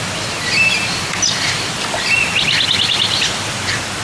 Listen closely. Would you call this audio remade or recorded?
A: recorded